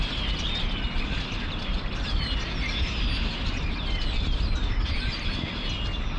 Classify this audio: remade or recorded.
recorded